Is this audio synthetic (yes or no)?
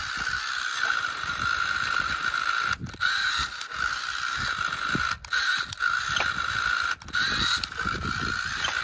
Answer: no